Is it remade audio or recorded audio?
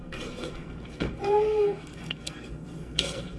remade